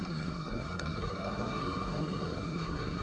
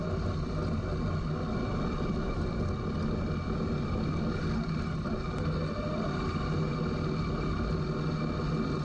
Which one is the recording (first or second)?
second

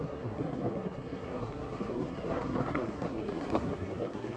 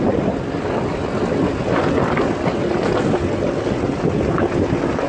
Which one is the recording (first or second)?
second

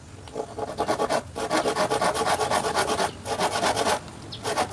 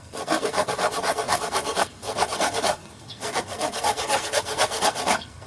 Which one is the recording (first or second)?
first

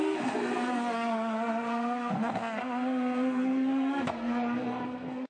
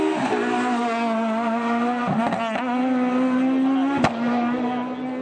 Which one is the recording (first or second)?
second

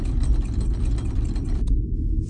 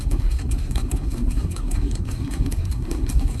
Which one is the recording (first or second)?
first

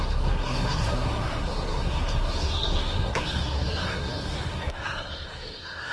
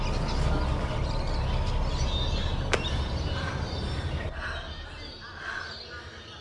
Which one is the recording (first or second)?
second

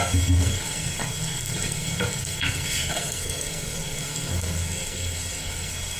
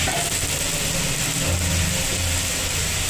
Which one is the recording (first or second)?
second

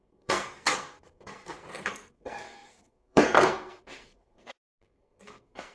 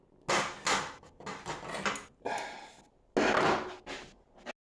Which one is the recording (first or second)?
second